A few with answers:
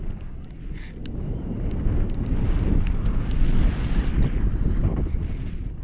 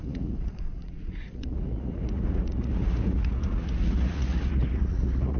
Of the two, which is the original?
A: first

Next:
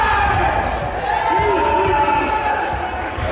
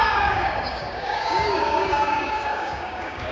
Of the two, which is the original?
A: first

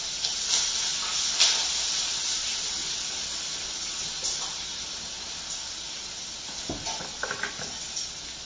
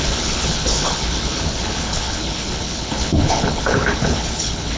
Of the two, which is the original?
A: first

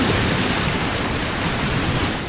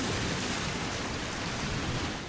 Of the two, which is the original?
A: second